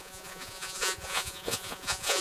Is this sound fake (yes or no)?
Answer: yes